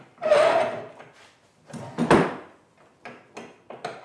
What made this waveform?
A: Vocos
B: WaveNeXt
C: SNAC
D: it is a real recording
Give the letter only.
D